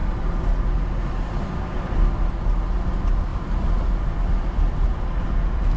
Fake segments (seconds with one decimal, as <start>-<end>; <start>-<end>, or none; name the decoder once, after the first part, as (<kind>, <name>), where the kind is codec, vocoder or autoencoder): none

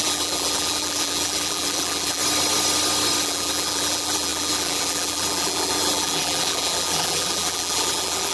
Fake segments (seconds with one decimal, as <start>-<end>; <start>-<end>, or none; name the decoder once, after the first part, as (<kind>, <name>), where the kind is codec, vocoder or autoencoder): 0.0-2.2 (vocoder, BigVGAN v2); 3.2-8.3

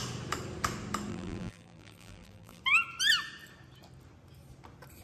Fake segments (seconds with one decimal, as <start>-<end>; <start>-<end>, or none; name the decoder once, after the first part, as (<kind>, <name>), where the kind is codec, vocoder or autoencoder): 1.1-2.6 (vocoder, BigVGAN v2)